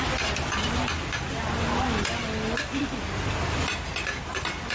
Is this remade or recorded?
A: recorded